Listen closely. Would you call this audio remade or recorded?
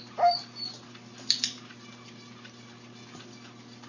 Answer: recorded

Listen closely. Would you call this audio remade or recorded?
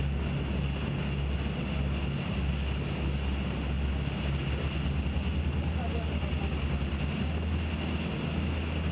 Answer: recorded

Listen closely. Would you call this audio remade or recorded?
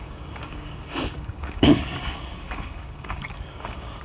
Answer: remade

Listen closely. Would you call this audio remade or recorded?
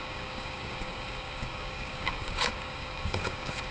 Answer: remade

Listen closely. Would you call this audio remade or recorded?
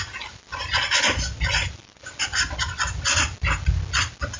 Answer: recorded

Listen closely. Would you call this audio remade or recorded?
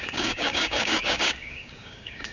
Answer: remade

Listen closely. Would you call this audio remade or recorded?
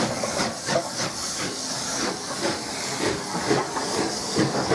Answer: remade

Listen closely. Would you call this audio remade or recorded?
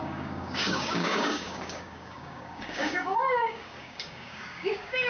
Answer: remade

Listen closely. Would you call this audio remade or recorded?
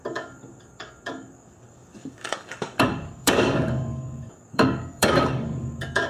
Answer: remade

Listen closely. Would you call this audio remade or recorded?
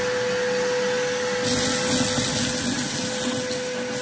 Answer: recorded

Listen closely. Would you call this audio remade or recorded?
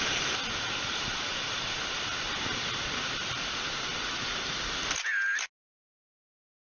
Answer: recorded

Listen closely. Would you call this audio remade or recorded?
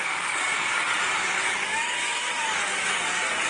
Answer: remade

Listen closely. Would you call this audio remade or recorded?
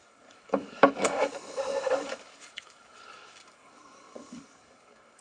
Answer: remade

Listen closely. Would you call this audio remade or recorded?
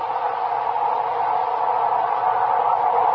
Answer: recorded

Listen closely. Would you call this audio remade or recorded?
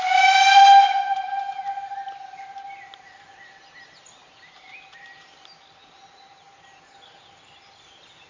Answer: recorded